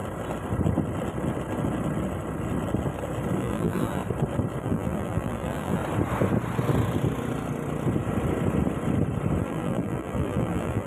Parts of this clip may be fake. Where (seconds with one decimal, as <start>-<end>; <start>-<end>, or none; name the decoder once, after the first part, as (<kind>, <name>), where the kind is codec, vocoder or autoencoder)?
3.4-4.0 (vocoder, BigVGAN v2); 4.6-5.8; 9.4-10.9